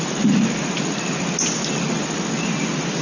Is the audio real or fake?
real